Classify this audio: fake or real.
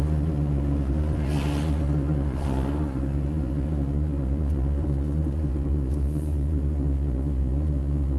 fake